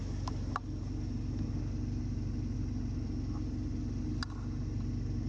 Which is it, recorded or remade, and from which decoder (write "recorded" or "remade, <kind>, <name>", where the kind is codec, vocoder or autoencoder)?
recorded